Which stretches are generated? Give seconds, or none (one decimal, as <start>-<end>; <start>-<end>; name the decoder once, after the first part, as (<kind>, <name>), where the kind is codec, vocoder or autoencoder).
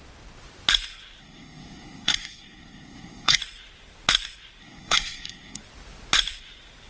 1.2-3.4 (codec, SNAC); 4.6-5.6